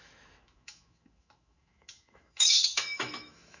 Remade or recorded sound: remade